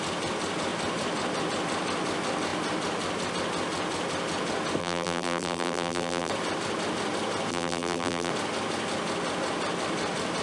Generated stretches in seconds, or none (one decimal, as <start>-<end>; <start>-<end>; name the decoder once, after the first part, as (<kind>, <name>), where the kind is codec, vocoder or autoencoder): 4.8-6.3 (vocoder, BigVGAN v2); 7.5-8.3